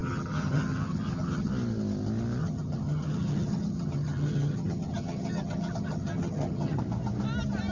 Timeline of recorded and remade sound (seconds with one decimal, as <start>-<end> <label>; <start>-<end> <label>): 0.0-1.5 remade; 1.5-2.4 recorded; 2.4-6.8 remade; 6.8-7.7 recorded